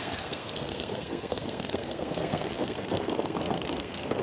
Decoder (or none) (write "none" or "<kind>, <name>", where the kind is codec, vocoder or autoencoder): codec, SNAC